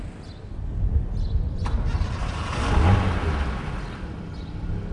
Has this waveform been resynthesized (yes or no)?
no